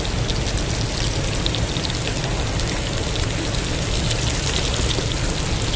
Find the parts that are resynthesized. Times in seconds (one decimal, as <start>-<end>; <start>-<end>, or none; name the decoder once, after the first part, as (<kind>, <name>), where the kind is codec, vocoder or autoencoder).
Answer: none